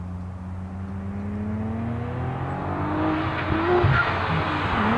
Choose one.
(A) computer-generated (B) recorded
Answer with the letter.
B